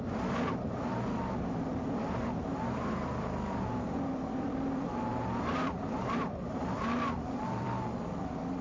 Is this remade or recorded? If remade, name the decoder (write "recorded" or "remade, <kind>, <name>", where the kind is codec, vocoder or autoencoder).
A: remade, vocoder, BigVGAN v2